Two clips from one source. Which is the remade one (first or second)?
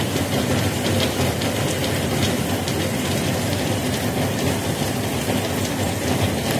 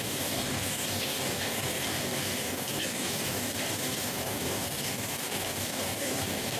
second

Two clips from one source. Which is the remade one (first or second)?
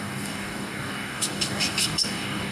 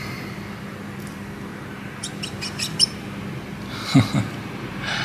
first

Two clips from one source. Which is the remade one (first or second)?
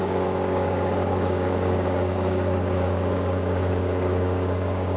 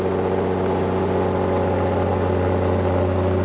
first